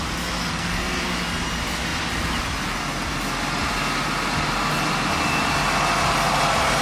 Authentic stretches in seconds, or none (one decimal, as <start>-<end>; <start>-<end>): 0.0-0.4; 1.1-6.8